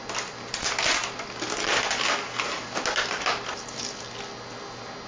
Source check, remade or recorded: recorded